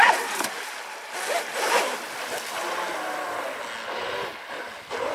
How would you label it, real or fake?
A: real